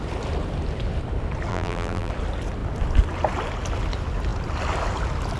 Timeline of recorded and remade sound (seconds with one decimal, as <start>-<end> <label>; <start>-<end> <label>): 0.0-1.5 recorded; 1.5-2.1 remade; 2.1-5.4 recorded